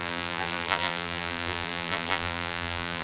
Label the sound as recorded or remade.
remade